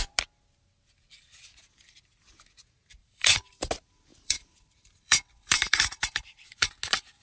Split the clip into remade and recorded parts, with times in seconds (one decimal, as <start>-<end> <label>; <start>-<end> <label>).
0.0-3.0 recorded; 3.0-3.5 remade; 3.5-4.1 recorded; 4.1-6.7 remade; 6.7-7.2 recorded